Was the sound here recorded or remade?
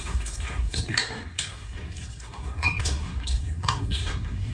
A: remade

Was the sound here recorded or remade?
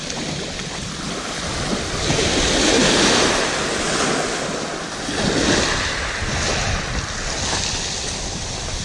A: recorded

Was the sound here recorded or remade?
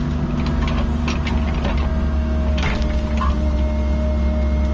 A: recorded